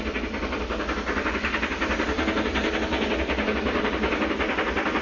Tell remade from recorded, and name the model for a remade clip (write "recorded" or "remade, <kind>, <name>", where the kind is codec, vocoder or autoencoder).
recorded